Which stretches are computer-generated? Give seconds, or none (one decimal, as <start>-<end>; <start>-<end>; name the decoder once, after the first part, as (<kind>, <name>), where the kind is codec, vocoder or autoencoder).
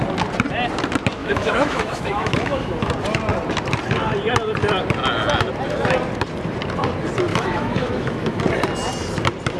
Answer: 1.2-2.9 (autoencoder, DAC-VAE); 7.3-8.4